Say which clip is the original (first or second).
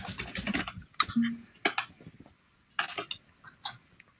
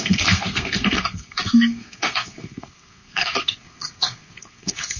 first